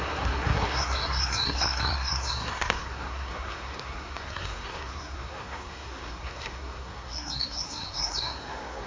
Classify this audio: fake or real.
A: fake